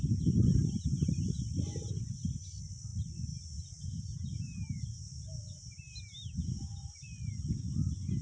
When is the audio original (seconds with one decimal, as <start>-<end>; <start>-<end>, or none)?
0.0-8.2